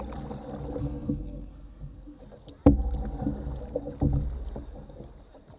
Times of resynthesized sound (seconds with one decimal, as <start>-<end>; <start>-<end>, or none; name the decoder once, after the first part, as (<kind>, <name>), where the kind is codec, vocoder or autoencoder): 0.8-2.2 (codec, SNAC)